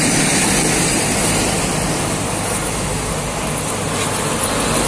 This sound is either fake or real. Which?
real